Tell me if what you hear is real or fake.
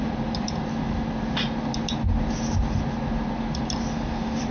real